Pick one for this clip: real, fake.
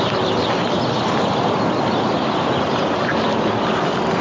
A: real